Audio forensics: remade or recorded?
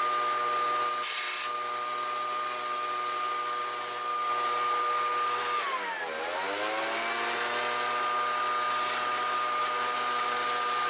recorded